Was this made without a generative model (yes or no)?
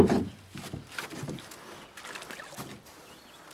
yes